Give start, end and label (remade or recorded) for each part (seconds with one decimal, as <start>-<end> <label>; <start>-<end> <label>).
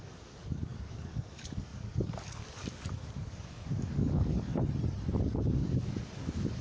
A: 0.0-4.5 remade; 4.5-5.1 recorded; 5.1-6.6 remade